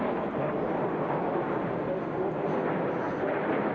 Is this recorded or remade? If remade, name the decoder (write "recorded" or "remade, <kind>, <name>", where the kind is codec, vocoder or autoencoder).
recorded